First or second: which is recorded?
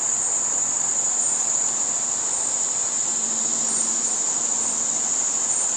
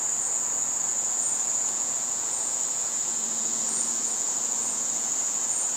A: first